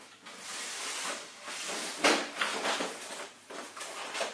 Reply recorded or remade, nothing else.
remade